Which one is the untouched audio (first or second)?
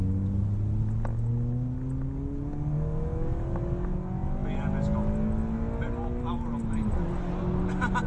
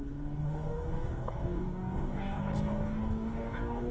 first